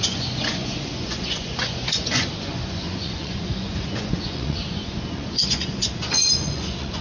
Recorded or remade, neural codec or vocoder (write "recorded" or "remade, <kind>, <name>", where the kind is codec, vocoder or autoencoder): remade, vocoder, Vocos